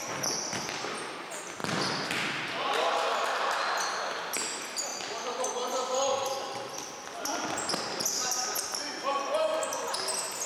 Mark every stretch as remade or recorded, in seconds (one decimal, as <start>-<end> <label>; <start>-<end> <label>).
0.0-10.5 recorded